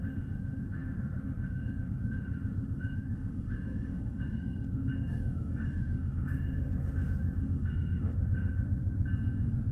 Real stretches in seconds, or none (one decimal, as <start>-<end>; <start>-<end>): 8.8-9.7